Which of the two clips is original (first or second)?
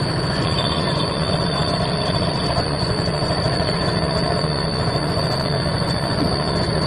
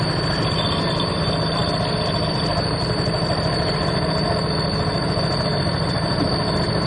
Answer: second